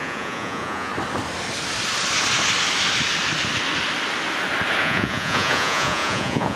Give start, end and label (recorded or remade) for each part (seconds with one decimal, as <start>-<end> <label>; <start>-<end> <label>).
0.0-0.9 remade; 0.9-4.8 recorded; 4.8-6.6 remade